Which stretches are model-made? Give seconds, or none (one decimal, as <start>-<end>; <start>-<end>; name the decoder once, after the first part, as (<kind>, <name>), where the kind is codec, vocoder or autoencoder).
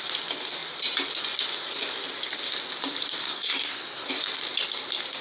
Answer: 3.2-4.1 (codec, SNAC)